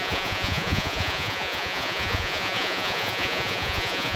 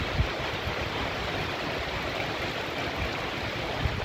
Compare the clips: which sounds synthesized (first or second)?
first